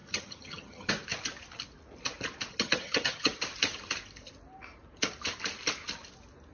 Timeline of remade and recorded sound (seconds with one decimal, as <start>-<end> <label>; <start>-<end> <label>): 0.0-0.9 remade; 0.9-2.5 recorded; 2.5-3.3 remade; 3.3-6.5 recorded